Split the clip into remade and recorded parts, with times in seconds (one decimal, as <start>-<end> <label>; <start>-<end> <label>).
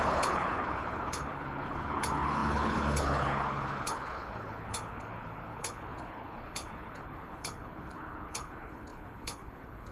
0.0-9.9 remade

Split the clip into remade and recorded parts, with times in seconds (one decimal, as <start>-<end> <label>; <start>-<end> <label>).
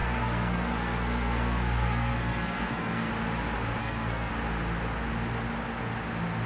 0.0-3.1 remade; 3.1-3.8 recorded; 3.8-4.3 remade; 4.3-6.5 recorded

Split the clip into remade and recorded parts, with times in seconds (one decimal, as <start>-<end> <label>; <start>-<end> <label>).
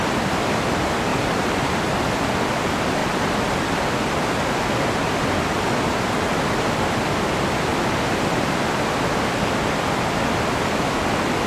0.0-1.1 recorded; 1.1-2.0 remade; 2.0-7.7 recorded; 7.7-8.8 remade; 8.8-11.5 recorded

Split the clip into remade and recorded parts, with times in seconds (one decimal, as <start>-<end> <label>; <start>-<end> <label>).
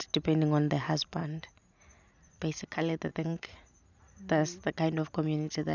0.0-1.2 recorded; 1.2-1.8 remade; 1.8-3.1 recorded; 3.1-4.0 remade; 4.0-5.7 recorded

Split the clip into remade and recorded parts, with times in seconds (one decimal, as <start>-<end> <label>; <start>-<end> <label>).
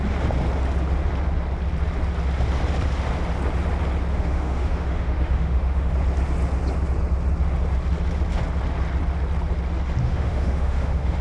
0.0-4.1 recorded; 4.1-5.9 remade; 5.9-10.0 recorded; 10.0-11.2 remade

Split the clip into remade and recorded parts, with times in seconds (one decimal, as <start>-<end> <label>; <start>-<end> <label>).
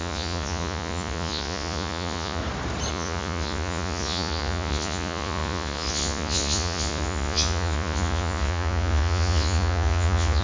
0.0-2.4 remade; 2.4-2.9 recorded; 2.9-10.4 remade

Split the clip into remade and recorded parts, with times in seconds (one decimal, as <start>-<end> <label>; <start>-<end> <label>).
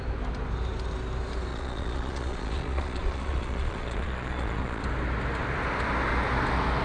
0.0-1.5 recorded; 1.5-4.8 remade; 4.8-6.8 recorded